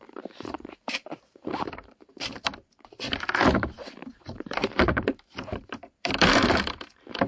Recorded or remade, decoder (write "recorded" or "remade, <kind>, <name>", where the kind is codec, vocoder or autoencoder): remade, vocoder, BigVGAN v2